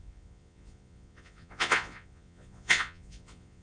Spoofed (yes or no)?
yes